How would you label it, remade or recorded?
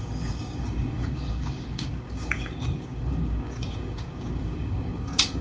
remade